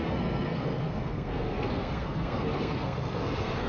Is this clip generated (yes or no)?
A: yes